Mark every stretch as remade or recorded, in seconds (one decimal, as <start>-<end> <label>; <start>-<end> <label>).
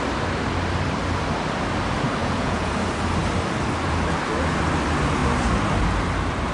0.0-2.2 recorded; 2.2-2.7 remade; 2.7-6.5 recorded